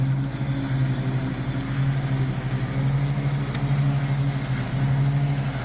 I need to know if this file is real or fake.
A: real